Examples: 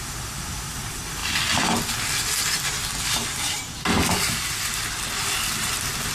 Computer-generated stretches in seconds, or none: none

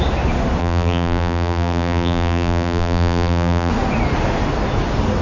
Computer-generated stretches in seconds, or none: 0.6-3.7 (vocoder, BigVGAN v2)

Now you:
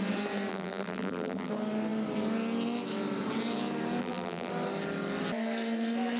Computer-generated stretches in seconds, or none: 0.5-1.5 (vocoder, BigVGAN v2); 4.0-4.5